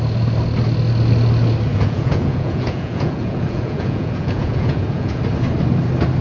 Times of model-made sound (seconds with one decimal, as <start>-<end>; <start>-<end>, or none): 1.7-5.2